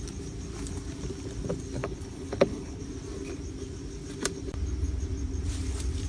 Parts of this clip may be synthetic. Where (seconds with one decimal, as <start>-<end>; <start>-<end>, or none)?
1.8-2.8